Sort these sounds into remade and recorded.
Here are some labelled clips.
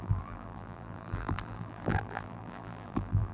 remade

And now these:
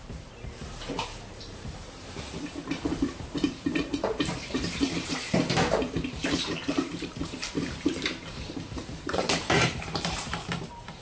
remade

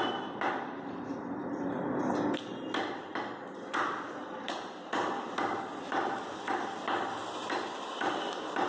remade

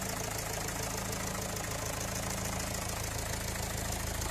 recorded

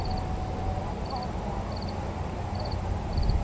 recorded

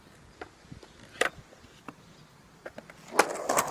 recorded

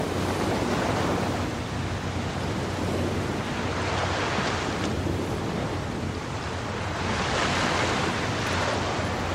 recorded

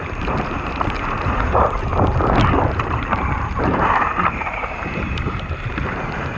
remade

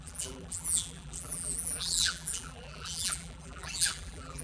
remade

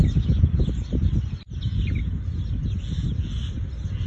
recorded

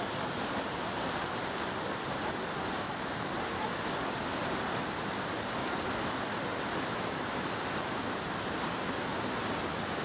recorded